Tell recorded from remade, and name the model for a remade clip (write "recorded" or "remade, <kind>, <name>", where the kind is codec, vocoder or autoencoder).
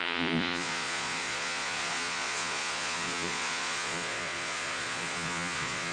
remade, vocoder, Vocos